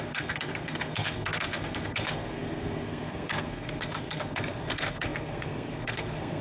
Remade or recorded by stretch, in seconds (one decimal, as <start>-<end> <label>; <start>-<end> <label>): 0.0-6.4 remade

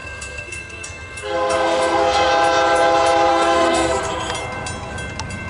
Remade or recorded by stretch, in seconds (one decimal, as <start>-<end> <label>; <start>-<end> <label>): 0.0-2.3 remade; 2.3-3.3 recorded; 3.3-4.0 remade; 4.0-5.5 recorded

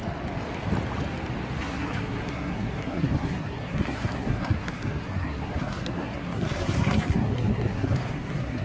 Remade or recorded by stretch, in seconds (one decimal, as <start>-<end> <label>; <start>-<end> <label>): 0.0-1.6 recorded; 1.6-8.6 remade

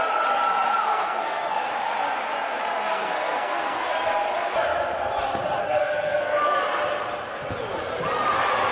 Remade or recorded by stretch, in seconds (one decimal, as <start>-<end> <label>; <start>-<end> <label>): 0.0-0.9 recorded; 0.9-1.7 remade; 1.7-2.9 recorded; 2.9-3.9 remade; 3.9-5.6 recorded; 5.6-6.4 remade; 6.4-8.7 recorded

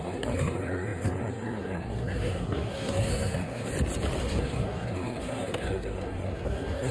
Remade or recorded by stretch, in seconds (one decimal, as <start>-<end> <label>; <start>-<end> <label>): 0.0-3.7 remade; 3.7-4.2 recorded; 4.2-6.9 remade